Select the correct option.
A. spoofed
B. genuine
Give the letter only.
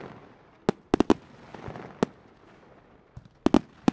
B